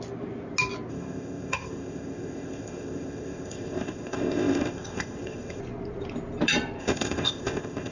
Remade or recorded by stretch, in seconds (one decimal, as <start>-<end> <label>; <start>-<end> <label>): 0.0-0.9 recorded; 0.9-5.6 remade; 5.6-6.8 recorded; 6.8-7.9 remade